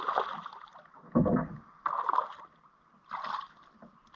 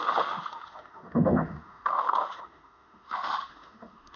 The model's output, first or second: second